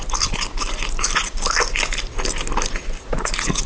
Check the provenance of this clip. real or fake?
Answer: real